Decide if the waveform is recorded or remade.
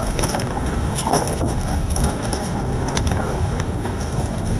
remade